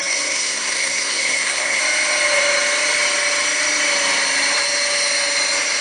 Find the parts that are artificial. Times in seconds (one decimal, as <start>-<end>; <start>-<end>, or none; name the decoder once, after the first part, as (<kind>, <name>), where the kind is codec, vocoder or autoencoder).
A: 0.0-1.8 (codec, SNAC)